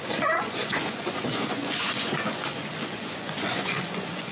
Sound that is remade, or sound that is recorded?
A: remade